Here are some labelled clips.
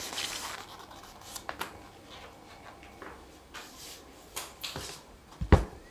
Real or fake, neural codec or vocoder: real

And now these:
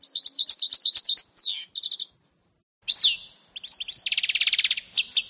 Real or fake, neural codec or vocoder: real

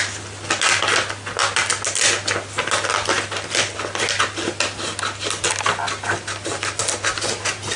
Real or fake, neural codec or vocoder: real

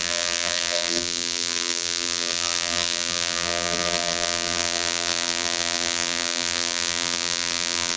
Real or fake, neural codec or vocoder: fake, vocoder, BigVGAN v2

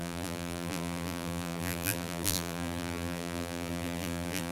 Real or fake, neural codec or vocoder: fake, vocoder, BigVGAN v2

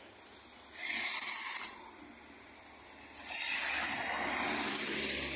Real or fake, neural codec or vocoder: fake, vocoder, BigVGAN v2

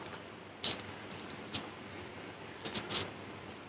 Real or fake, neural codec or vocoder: real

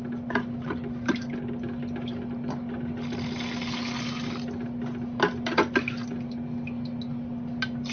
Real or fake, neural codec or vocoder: real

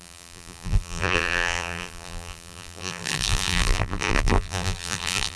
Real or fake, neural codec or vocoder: fake, vocoder, BigVGAN v2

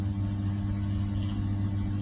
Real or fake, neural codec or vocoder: real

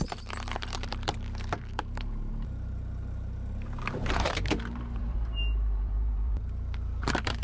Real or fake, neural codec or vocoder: fake, vocoder, BigVGAN v2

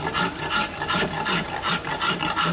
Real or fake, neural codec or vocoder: fake, vocoder, BigVGAN v2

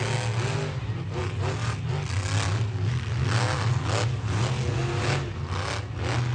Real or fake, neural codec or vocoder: real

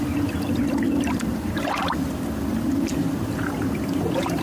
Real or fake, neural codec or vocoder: fake, vocoder, BigVGAN v2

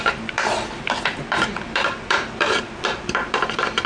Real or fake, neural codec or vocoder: fake, vocoder, BigVGAN v2